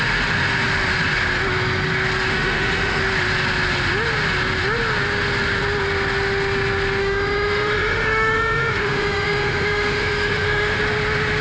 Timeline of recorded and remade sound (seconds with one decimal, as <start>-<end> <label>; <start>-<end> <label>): 0.0-2.3 recorded; 2.3-3.0 remade; 3.0-7.0 recorded; 7.0-10.8 remade; 10.8-11.4 recorded